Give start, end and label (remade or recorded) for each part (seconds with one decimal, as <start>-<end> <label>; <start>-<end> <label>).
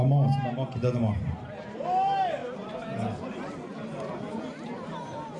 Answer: 0.0-2.4 recorded; 2.4-3.3 remade; 3.3-5.4 recorded